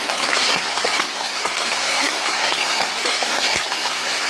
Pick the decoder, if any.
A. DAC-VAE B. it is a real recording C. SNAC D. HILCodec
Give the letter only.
C